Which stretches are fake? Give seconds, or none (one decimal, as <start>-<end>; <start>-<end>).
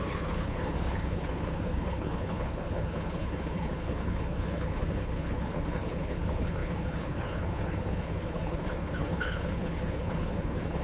0.0-10.8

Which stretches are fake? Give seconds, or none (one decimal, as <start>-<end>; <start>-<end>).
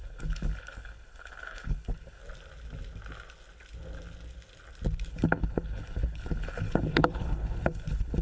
0.0-2.2; 5.1-8.2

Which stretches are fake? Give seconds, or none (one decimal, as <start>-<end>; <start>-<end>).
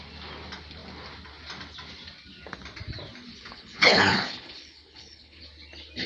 3.3-5.4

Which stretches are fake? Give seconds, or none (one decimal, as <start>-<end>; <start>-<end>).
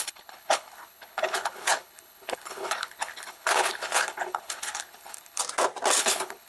0.0-5.4; 6.0-6.5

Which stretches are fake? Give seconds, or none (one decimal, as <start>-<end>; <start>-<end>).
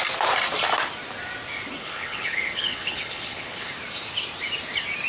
1.8-3.7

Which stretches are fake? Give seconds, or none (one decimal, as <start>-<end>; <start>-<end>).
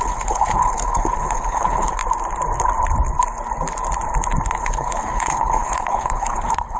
0.0-2.0; 4.6-6.8